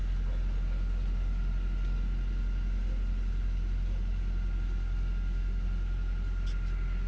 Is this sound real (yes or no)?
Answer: yes